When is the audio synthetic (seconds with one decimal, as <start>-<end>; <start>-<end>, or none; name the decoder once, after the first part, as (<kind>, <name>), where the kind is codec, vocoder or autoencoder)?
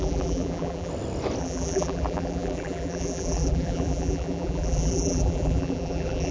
0.0-0.9 (vocoder, BigVGAN v2); 1.4-6.3